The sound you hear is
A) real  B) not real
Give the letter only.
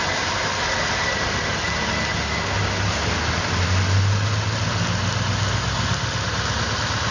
A